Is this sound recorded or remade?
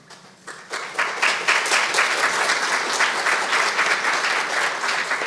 recorded